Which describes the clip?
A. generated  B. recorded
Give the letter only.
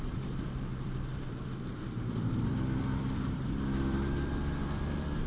A